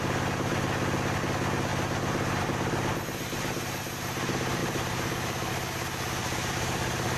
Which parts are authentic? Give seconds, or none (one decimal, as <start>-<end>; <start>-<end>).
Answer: 0.0-4.6; 5.5-6.2

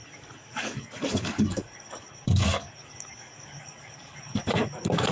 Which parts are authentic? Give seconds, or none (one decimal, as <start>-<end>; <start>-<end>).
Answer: none

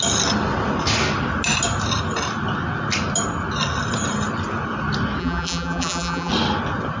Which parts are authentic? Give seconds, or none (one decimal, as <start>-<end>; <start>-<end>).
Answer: 0.0-5.2; 6.3-7.0

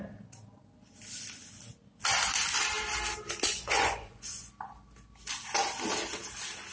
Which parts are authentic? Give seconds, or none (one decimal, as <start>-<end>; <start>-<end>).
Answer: 0.0-3.5; 4.5-6.7

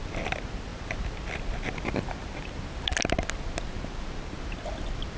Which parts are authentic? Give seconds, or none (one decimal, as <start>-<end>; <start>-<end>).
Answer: 0.0-5.2

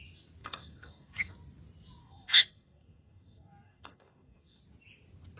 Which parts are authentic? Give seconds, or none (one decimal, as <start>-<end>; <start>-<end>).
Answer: 0.0-0.4; 1.3-2.0; 4.6-5.4